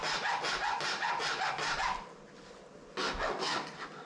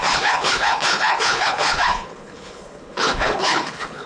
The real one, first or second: first